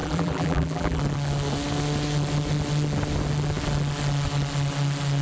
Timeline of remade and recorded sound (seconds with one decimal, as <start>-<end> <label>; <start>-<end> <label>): 0.0-1.0 remade; 1.0-5.2 recorded